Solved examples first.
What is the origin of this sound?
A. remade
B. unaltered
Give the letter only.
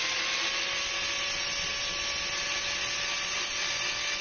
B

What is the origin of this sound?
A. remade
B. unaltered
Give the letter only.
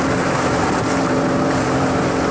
A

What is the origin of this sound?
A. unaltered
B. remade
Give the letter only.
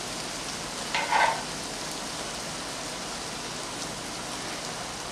A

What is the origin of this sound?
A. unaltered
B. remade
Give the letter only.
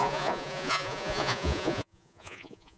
B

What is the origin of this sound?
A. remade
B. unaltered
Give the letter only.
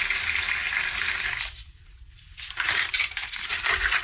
B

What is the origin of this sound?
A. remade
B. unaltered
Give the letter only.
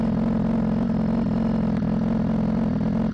B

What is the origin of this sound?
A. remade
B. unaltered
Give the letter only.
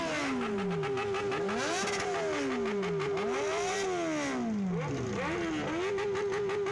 B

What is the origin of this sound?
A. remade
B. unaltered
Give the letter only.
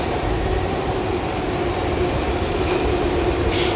B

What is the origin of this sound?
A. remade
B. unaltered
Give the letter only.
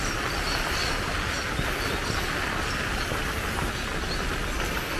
B